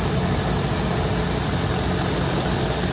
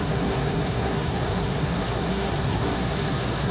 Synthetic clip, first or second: second